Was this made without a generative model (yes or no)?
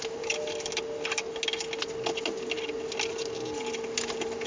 yes